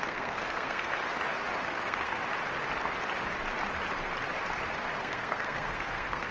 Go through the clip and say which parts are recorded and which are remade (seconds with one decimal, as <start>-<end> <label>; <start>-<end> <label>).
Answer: 0.0-1.0 remade; 1.0-1.6 recorded; 1.6-2.2 remade; 2.2-5.0 recorded; 5.0-6.3 remade